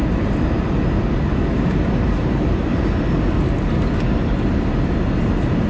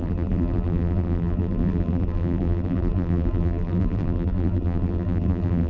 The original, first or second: first